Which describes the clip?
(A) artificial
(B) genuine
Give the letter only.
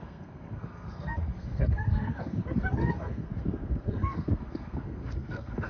A